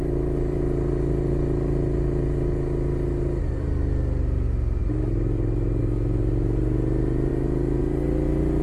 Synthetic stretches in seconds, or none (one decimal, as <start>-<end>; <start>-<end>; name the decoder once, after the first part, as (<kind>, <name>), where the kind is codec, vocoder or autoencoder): none